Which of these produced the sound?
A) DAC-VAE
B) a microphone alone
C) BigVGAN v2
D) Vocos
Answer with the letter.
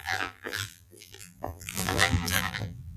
C